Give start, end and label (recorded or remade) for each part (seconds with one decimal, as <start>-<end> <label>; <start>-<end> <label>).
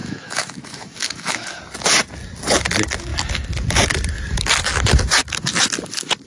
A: 0.0-1.6 remade; 1.6-6.3 recorded